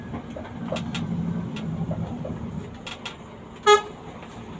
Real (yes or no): yes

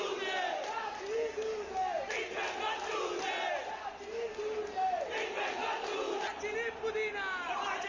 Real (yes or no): yes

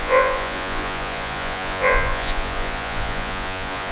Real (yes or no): no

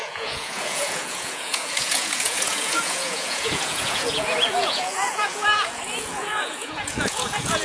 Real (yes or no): no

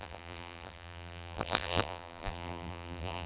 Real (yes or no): no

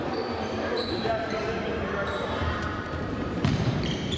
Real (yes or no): no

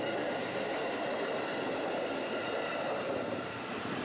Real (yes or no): yes